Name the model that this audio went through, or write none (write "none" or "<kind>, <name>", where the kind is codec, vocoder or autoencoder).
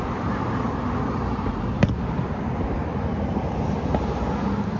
none